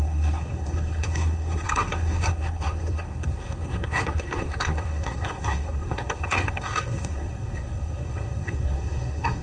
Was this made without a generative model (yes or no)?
no